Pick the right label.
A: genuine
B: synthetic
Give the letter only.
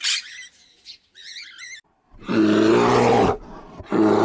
A